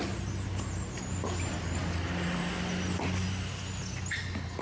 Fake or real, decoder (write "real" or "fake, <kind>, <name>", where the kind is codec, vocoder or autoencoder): real